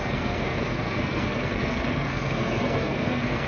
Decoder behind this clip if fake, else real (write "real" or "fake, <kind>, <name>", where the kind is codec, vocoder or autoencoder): fake, codec, SNAC